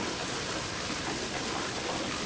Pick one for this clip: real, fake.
real